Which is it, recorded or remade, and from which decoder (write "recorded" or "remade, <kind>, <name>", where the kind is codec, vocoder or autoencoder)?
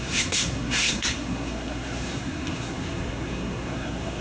remade, codec, SNAC